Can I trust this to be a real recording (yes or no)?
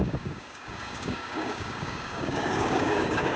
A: no